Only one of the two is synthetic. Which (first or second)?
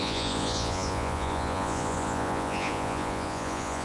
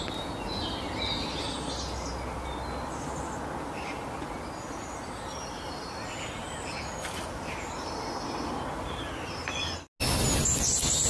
first